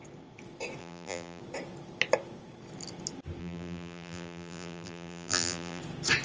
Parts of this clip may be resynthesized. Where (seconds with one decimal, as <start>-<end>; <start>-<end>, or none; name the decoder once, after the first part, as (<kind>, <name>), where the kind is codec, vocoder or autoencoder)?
0.8-1.4 (vocoder, BigVGAN v2); 3.4-5.8